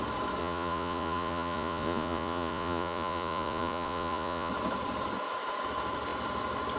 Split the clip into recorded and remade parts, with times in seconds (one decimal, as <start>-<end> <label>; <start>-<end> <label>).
0.0-0.4 recorded; 0.4-4.5 remade; 4.5-6.8 recorded